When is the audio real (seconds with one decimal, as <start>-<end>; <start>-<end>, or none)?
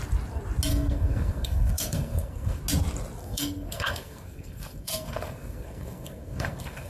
0.0-0.7; 2.6-3.2